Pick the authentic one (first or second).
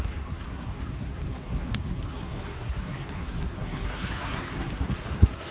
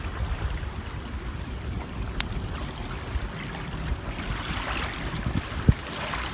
second